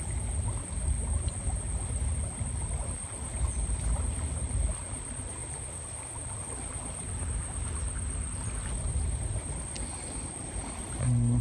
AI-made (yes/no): no